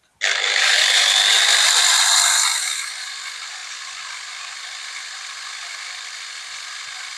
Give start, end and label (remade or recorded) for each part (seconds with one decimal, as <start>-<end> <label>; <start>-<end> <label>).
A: 0.0-7.2 recorded